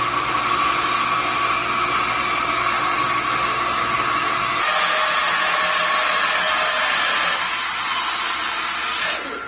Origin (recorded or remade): recorded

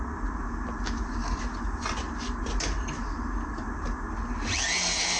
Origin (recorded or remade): recorded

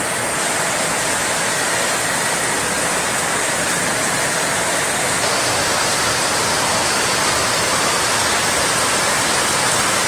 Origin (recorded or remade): recorded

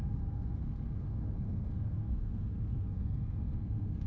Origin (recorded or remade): remade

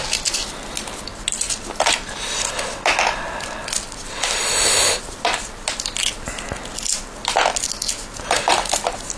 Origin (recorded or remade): recorded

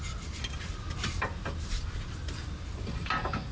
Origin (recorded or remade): recorded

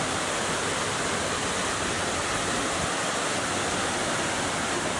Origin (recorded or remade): recorded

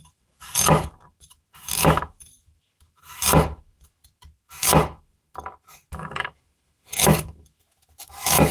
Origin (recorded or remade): remade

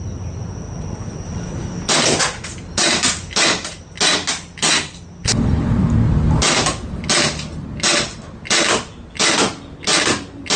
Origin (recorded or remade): recorded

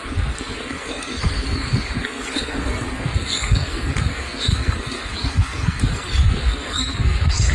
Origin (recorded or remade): remade